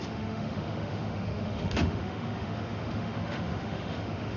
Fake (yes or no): yes